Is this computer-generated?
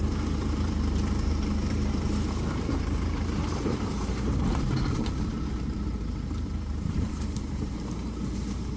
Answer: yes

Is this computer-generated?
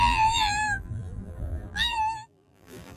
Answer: yes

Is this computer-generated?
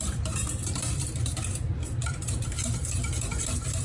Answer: yes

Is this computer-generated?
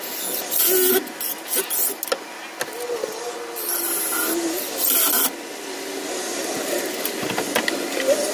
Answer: no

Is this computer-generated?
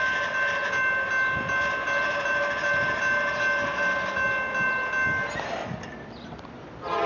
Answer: no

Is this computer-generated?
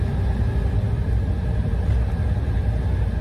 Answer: no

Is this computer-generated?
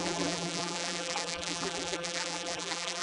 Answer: yes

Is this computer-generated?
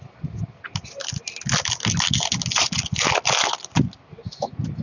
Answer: no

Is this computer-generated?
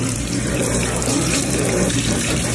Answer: yes